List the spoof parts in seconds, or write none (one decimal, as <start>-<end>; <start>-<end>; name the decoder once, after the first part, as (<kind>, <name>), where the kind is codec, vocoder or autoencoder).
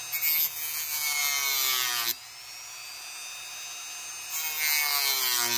none